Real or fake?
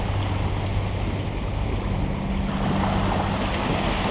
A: real